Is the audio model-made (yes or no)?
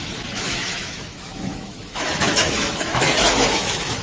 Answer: yes